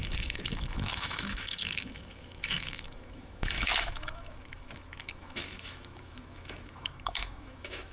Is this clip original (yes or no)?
no